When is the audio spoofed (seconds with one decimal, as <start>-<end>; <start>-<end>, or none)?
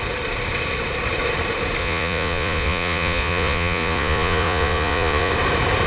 1.8-5.3